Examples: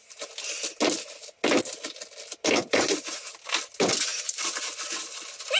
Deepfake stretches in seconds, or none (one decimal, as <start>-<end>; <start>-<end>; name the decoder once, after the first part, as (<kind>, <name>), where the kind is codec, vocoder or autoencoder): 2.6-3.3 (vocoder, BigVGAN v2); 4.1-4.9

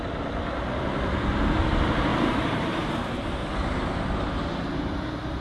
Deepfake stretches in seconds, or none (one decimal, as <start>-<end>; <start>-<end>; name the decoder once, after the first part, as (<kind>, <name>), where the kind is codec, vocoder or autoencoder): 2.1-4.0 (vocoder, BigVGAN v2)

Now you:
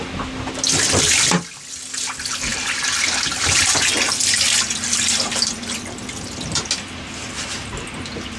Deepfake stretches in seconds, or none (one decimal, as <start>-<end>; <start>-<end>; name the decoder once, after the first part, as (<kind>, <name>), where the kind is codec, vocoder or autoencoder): none

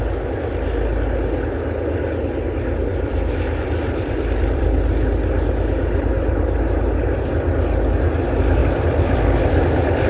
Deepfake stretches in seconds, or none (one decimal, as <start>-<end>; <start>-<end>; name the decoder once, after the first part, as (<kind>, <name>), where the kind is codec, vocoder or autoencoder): 2.9-6.6 (vocoder, BigVGAN v2); 8.6-9.6